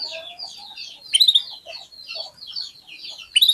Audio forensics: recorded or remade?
recorded